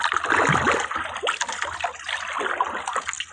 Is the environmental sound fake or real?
real